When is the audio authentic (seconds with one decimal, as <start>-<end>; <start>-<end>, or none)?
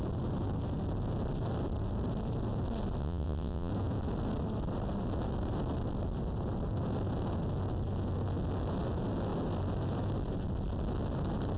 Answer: 0.0-3.0; 3.7-11.6